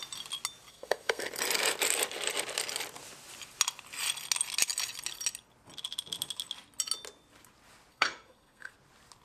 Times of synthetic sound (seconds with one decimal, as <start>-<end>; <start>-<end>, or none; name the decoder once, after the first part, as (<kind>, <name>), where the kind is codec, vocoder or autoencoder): 0.7-1.3 (codec, SNAC); 7.9-8.7